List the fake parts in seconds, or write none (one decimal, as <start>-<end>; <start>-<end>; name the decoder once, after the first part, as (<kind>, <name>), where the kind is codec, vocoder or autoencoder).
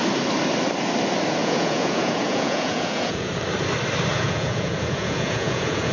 1.4-3.3 (vocoder, Vocos); 4.1-5.9